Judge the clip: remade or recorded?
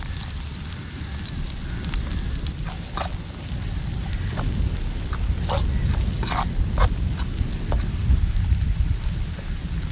recorded